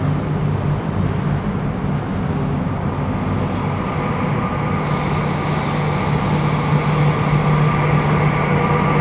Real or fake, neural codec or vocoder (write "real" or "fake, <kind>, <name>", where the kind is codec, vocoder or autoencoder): real